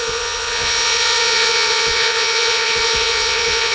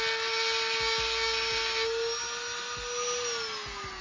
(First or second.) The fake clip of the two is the first